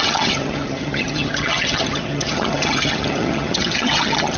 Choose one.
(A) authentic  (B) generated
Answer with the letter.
B